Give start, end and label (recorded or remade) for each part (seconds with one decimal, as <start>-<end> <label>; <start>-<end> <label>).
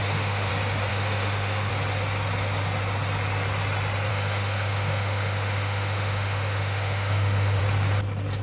0.0-0.5 remade; 0.5-0.9 recorded; 0.9-1.7 remade; 1.7-4.1 recorded; 4.1-7.6 remade; 7.6-8.4 recorded